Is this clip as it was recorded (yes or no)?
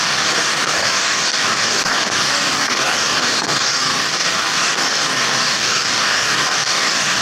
no